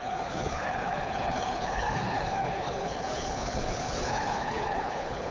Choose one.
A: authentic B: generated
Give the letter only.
B